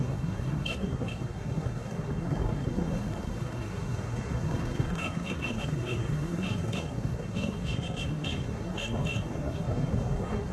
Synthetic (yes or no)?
yes